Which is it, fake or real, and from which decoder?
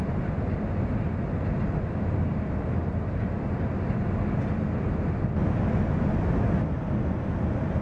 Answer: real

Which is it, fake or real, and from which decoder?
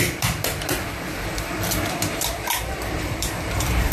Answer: fake, vocoder, BigVGAN v2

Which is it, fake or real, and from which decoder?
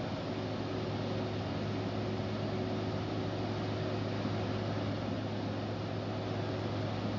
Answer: real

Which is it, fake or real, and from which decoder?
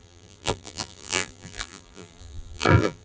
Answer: fake, vocoder, BigVGAN v2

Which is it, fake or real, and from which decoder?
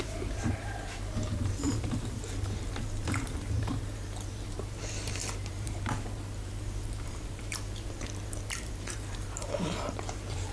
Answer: fake, vocoder, BigVGAN v2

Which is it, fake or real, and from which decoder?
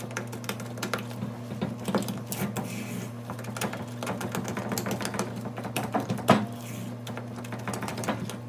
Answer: real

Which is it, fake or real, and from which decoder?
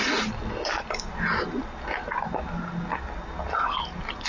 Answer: real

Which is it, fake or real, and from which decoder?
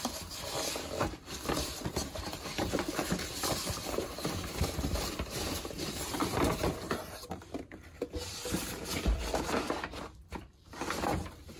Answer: fake, vocoder, BigVGAN v2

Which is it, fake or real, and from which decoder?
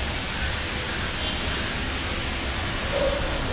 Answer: real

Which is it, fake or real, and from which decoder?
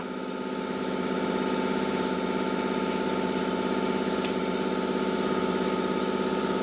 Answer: real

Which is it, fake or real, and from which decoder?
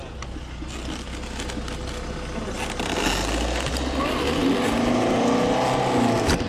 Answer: real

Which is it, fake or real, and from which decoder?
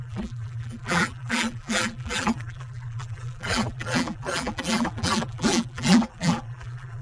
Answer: fake, vocoder, BigVGAN v2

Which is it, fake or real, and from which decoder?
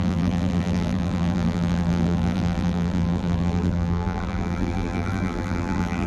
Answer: fake, vocoder, BigVGAN v2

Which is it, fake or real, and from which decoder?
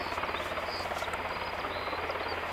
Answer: real